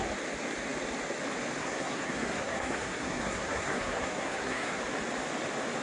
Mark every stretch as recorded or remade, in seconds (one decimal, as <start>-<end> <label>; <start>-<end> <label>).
0.0-1.6 recorded; 1.6-4.8 remade; 4.8-5.8 recorded